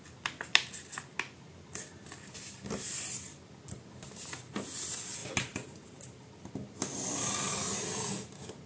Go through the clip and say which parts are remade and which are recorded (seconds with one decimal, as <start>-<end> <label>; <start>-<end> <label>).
0.0-5.2 recorded; 5.2-6.5 remade; 6.5-8.7 recorded